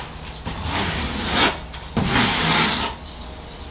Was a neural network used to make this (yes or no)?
no